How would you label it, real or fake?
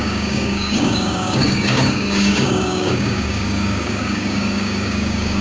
fake